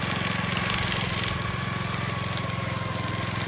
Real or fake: real